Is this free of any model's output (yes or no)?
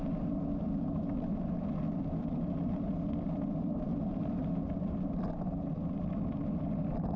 yes